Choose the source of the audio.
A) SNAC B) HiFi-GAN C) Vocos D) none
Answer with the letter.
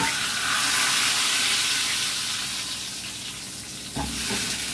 D